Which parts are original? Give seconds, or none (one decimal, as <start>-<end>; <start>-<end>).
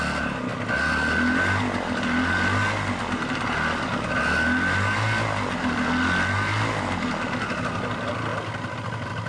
0.0-8.3